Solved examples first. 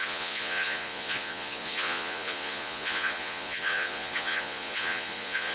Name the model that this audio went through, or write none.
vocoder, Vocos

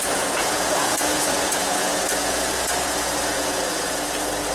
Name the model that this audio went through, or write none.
vocoder, Vocos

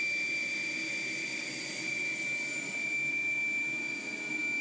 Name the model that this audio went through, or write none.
none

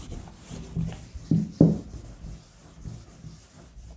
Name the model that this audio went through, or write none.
none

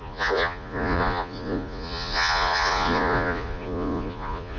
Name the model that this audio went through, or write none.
vocoder, Vocos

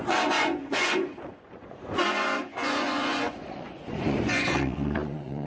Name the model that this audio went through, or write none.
vocoder, Vocos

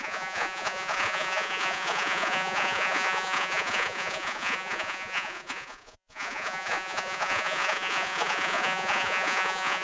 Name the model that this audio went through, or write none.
vocoder, Vocos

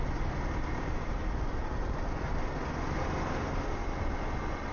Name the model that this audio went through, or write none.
none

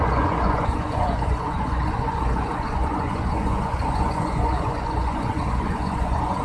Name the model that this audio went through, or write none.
vocoder, Vocos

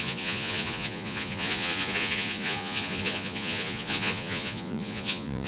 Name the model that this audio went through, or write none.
vocoder, Vocos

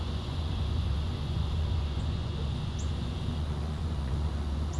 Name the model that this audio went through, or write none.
vocoder, Vocos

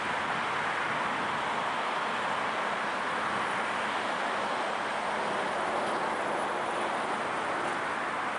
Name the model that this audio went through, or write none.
none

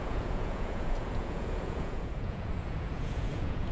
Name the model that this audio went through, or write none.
vocoder, Vocos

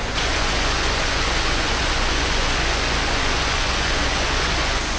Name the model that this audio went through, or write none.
vocoder, Vocos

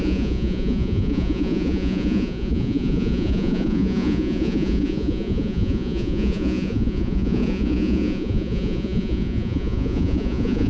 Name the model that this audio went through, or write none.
vocoder, Vocos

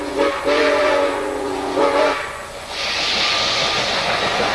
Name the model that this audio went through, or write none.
vocoder, Vocos